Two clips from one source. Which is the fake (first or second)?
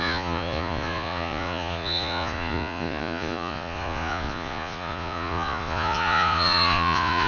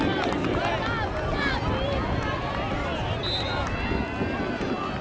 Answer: first